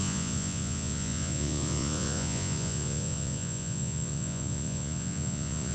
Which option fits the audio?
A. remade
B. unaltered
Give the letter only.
A